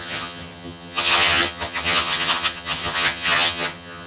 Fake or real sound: fake